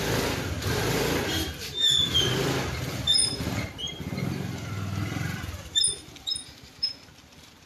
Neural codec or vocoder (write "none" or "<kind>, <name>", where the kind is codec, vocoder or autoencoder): none